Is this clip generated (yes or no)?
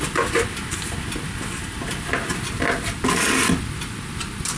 no